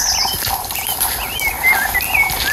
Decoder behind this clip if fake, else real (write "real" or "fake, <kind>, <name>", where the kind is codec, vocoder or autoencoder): real